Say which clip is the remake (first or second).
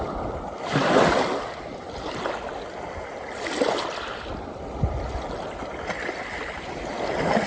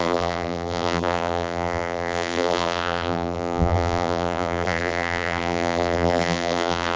second